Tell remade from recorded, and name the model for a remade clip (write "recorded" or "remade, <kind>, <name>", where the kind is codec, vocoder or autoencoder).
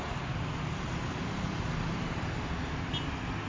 recorded